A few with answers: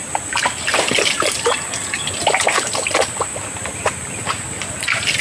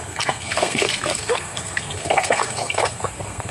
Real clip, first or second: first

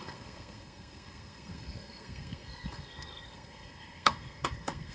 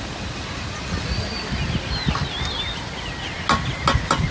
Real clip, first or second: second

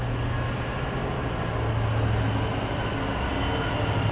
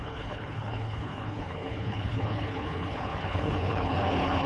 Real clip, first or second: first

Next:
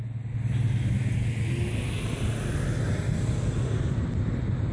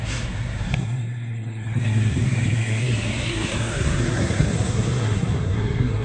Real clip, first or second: first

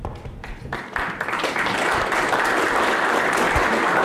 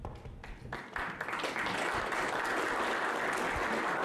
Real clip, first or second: second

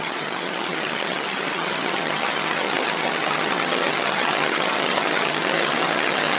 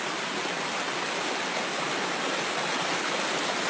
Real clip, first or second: second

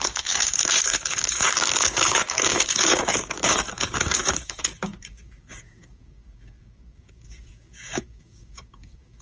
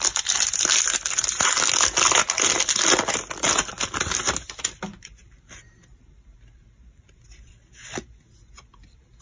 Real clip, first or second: second